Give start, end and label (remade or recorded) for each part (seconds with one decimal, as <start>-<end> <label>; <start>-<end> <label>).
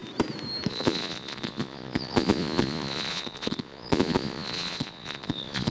0.0-0.7 recorded; 0.7-5.7 remade